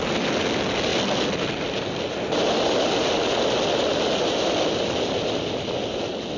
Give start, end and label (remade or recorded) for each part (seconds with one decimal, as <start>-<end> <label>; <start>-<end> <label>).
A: 0.0-6.4 recorded